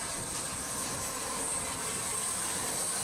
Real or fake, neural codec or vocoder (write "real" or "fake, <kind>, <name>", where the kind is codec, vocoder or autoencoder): real